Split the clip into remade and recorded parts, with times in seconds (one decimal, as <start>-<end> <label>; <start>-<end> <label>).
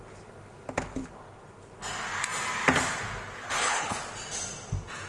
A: 0.0-3.4 recorded; 3.4-4.0 remade; 4.0-5.1 recorded